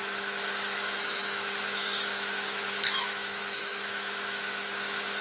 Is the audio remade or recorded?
remade